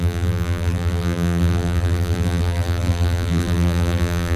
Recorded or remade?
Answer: remade